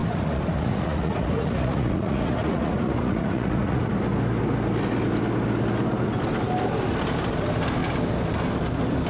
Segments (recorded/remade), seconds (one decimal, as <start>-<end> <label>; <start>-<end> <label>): 0.0-3.9 remade; 3.9-9.1 recorded